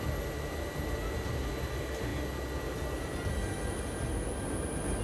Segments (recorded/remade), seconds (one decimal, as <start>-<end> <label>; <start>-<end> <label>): 0.0-5.0 recorded